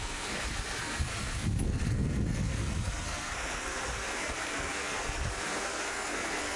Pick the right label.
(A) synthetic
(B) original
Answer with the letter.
A